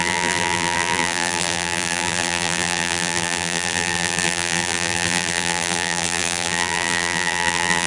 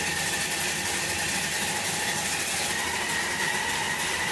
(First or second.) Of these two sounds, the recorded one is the second